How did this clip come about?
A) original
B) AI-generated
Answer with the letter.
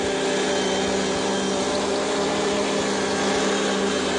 A